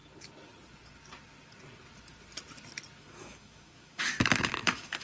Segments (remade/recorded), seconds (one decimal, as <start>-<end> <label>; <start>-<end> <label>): 0.0-3.0 recorded; 3.0-5.0 remade